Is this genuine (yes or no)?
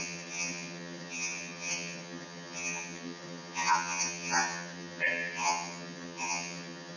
no